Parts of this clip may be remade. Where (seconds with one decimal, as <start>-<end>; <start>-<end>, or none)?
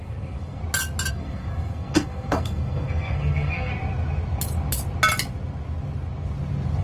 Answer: 0.0-0.6; 1.1-3.7